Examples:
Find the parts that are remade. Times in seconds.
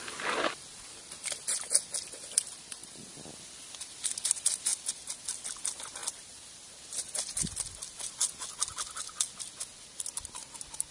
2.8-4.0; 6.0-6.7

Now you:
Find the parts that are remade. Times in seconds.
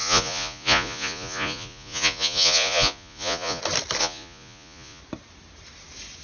0.0-3.6; 4.0-5.0